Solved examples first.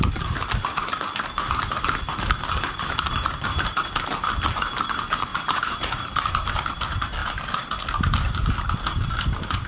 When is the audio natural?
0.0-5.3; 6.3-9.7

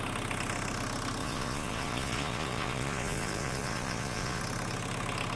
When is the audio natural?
0.0-1.2; 4.4-5.4